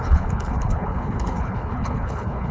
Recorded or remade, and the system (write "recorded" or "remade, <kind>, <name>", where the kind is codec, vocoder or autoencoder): remade, codec, HILCodec